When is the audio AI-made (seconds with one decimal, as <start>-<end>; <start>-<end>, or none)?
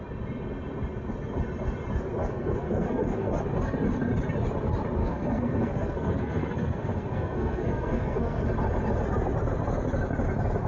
2.2-3.3; 5.0-8.5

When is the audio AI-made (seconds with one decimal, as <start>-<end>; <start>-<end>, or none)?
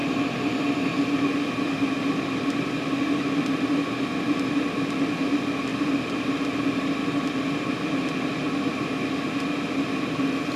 none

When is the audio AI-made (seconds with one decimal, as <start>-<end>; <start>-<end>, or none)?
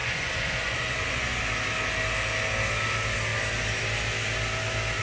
0.0-1.4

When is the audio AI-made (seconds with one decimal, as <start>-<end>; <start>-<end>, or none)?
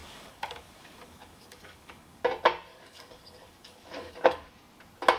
0.0-2.2; 2.7-4.5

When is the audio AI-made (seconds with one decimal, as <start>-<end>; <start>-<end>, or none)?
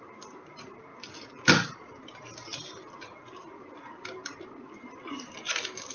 none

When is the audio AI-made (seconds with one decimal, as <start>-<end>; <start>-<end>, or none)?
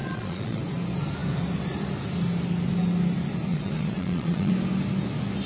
0.0-0.6; 3.5-4.5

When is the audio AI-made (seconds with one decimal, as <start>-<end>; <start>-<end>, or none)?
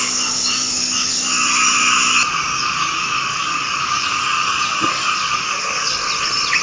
0.0-1.1; 2.3-6.0